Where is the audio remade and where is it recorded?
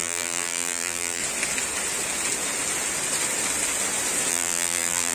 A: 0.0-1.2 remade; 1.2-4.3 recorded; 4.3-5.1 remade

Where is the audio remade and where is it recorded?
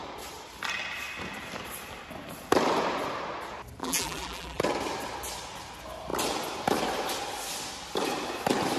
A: 0.0-3.8 recorded; 3.8-4.6 remade; 4.6-8.8 recorded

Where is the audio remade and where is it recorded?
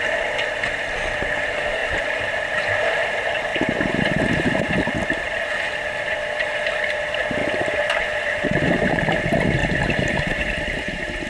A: 0.0-1.8 recorded; 1.8-3.0 remade; 3.0-3.5 recorded; 3.5-4.8 remade; 4.8-7.4 recorded; 7.4-9.2 remade; 9.2-9.6 recorded; 9.6-11.3 remade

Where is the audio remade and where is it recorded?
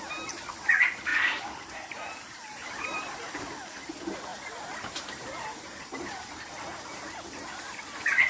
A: 0.0-1.1 recorded; 1.1-3.4 remade; 3.4-4.3 recorded; 4.3-6.5 remade; 6.5-8.3 recorded